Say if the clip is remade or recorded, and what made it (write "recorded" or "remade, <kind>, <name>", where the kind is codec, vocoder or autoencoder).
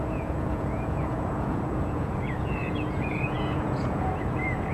remade, vocoder, Vocos